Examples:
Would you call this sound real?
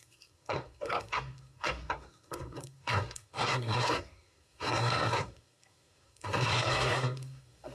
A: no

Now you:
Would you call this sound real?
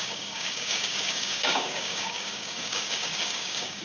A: no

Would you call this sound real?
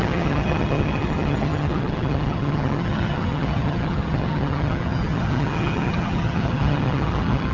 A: no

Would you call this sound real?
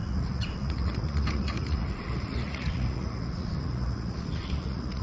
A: no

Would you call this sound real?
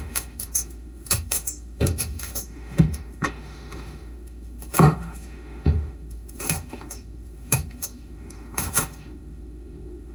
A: no